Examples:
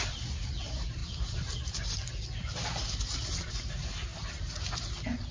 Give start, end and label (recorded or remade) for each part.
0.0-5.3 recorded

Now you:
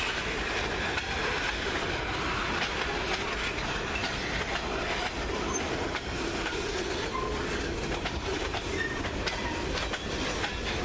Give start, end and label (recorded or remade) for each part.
0.0-4.0 recorded; 4.0-6.9 remade; 6.9-10.8 recorded

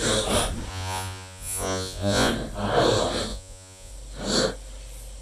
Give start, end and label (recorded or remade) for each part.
0.0-0.7 recorded; 0.7-2.3 remade; 2.3-3.3 recorded; 3.3-3.9 remade; 3.9-5.2 recorded

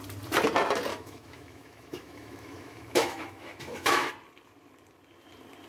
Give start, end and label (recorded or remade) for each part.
0.0-0.9 recorded; 0.9-4.1 remade; 4.1-5.7 recorded